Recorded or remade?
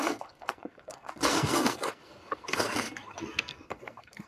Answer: remade